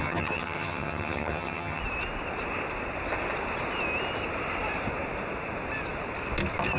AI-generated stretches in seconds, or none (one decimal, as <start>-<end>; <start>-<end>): 0.0-1.8